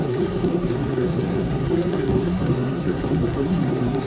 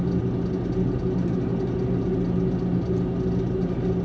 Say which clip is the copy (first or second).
first